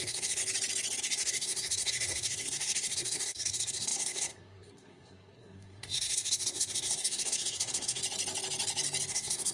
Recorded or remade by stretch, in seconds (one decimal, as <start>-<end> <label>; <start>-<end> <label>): 0.0-0.4 remade; 0.4-1.0 recorded; 1.0-8.0 remade; 8.0-9.1 recorded; 9.1-9.5 remade